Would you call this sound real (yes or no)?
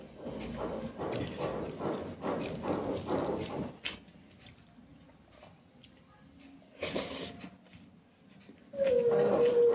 yes